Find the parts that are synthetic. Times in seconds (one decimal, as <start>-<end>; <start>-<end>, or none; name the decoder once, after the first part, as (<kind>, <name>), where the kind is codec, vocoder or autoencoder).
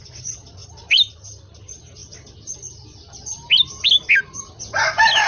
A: 0.6-1.1 (vocoder, BigVGAN v2)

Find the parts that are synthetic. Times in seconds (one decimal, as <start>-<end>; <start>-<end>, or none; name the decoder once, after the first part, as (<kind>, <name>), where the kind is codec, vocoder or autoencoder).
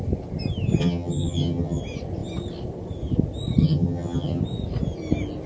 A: 0.8-1.8 (vocoder, HiFi-GAN); 3.6-4.4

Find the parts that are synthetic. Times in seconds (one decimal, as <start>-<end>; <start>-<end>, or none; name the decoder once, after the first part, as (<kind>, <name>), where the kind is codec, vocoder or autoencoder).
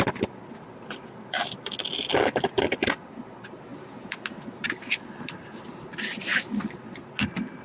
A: none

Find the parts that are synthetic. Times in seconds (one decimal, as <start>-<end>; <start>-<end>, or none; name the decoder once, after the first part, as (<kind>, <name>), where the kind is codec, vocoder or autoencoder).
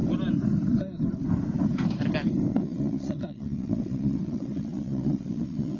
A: 2.5-5.8 (vocoder, WaveNeXt)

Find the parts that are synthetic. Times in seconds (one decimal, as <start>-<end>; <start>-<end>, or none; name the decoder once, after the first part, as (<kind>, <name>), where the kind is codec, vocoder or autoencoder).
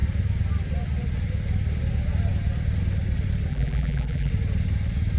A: 3.5-4.3 (vocoder, BigVGAN v2)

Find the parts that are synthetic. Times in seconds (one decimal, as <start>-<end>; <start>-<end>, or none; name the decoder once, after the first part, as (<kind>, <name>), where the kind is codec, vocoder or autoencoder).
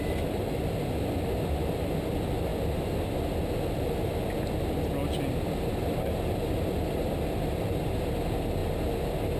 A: none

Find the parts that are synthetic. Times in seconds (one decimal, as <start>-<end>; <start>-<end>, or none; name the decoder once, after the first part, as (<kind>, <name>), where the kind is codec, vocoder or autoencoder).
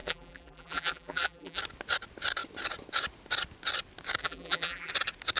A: 0.0-1.6 (vocoder, BigVGAN v2); 4.2-4.9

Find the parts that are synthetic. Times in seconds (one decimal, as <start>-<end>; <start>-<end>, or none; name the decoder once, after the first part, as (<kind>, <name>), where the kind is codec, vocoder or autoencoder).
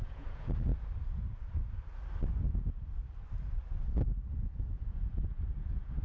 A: 0.0-0.7 (vocoder, Vocos); 4.3-6.0